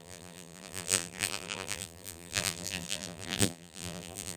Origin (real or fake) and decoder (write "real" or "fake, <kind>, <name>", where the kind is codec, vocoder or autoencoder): fake, vocoder, BigVGAN v2